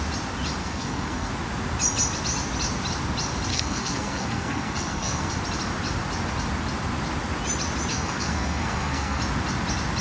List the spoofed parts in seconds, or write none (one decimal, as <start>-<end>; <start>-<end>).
0.6-1.3; 3.5-5.3; 7.9-9.2